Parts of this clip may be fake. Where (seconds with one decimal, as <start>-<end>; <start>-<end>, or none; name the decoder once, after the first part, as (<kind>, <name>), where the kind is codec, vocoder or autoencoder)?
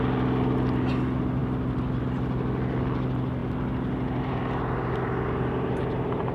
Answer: none